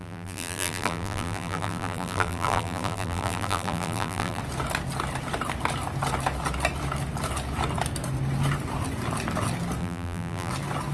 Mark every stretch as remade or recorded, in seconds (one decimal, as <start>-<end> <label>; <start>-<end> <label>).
0.0-4.4 remade; 4.4-9.8 recorded; 9.8-10.5 remade; 10.5-10.9 recorded